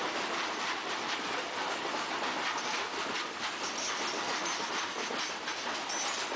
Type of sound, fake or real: real